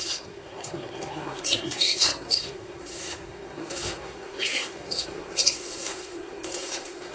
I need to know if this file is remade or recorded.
remade